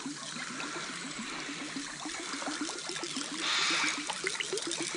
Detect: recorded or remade recorded